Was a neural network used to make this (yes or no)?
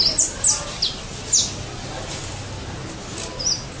no